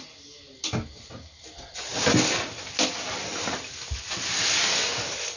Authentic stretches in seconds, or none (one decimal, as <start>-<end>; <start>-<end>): 0.0-5.4